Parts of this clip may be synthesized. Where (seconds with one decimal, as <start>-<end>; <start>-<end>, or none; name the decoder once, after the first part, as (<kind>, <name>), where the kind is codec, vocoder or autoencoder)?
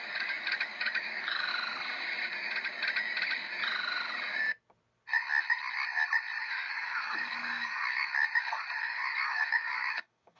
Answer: 0.0-1.5 (codec, DAC); 6.4-8.1; 8.8-10.4